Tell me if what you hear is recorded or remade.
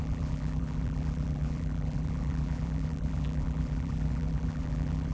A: remade